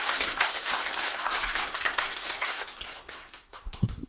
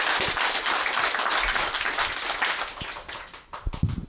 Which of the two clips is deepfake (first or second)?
first